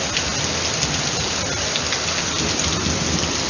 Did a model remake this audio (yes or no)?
no